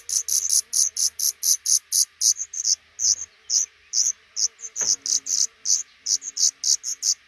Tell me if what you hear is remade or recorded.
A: recorded